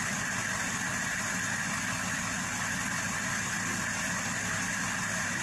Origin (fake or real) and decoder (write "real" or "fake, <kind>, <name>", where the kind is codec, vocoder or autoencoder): real